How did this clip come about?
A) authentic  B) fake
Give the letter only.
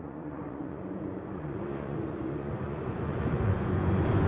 B